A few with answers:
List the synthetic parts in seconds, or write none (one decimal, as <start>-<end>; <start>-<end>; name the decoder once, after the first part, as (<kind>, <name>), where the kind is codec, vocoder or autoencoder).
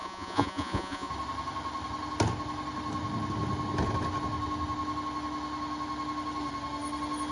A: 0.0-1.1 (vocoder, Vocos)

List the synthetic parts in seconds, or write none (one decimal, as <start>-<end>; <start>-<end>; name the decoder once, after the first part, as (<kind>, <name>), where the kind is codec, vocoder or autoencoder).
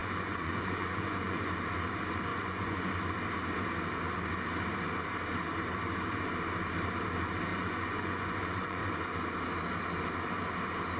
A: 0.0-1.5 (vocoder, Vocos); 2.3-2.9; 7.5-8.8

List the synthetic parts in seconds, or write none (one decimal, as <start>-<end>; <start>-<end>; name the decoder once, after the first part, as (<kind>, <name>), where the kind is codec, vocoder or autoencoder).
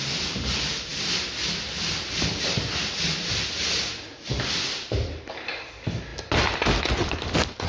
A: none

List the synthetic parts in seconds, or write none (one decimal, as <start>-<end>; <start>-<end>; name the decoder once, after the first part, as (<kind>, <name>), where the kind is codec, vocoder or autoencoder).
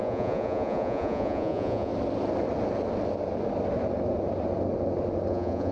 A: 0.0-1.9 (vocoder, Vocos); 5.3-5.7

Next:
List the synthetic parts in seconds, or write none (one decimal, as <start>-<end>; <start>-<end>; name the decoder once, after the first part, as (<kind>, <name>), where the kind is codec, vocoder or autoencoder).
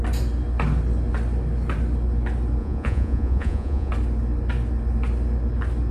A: 2.6-3.9 (vocoder, Vocos)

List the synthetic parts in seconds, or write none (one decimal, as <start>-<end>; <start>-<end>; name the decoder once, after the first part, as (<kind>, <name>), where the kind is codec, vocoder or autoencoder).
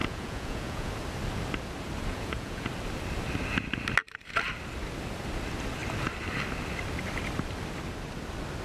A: 0.0-0.9 (vocoder, Vocos); 2.1-2.7